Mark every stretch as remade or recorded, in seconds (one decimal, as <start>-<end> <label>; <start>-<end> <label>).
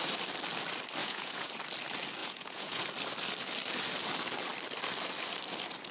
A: 0.0-1.0 recorded; 1.0-1.5 remade; 1.5-2.2 recorded; 2.2-2.8 remade; 2.8-5.9 recorded